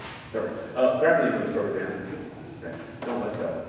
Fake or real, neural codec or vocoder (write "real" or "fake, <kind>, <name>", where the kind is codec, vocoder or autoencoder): fake, autoencoder, DAC-VAE